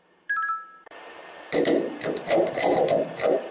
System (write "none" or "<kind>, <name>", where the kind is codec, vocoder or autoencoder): vocoder, BigVGAN v2